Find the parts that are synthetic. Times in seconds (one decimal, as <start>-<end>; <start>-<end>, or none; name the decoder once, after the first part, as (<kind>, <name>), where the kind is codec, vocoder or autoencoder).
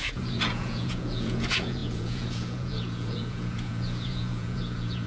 0.0-5.1 (vocoder, Vocos)